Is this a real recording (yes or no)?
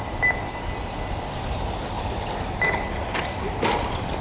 yes